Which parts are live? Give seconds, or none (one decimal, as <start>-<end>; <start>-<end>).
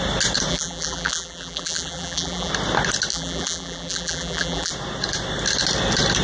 0.0-0.5; 2.5-3.1; 4.7-6.2